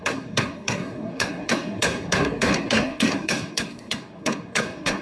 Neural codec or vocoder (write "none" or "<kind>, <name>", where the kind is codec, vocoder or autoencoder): codec, SNAC